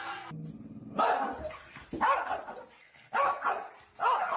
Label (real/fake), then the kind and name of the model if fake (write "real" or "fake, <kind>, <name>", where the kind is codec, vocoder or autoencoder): real